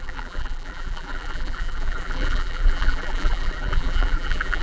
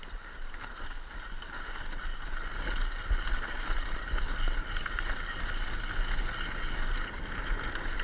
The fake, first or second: first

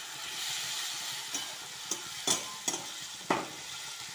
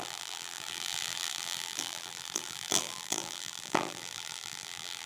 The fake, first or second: second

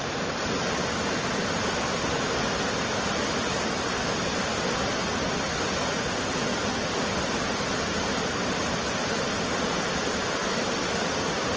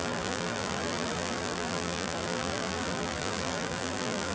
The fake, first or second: second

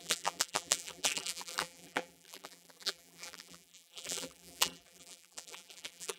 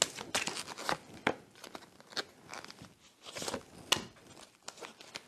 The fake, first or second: first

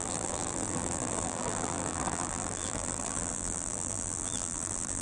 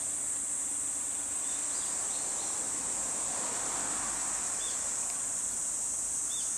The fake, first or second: first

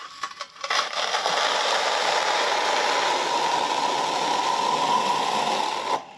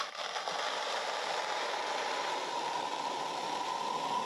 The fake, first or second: second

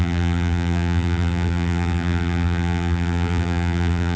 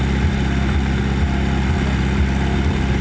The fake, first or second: first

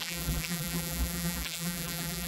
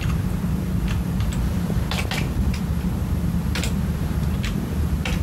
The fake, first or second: first